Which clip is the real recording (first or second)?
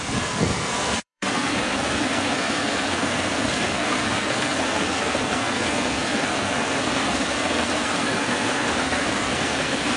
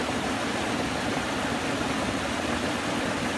second